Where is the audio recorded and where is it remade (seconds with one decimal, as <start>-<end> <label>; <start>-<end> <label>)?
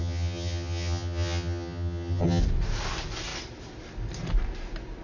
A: 0.0-2.4 remade; 2.4-5.0 recorded